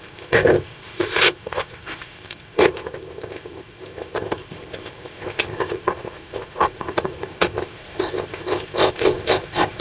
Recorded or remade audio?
remade